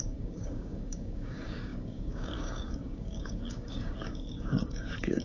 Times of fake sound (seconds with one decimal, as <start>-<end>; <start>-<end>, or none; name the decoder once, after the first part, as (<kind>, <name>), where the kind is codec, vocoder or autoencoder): 0.0-5.2 (codec, DAC)